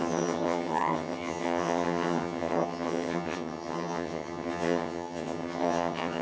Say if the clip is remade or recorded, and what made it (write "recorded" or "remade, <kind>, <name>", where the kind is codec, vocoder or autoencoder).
remade, vocoder, HiFi-GAN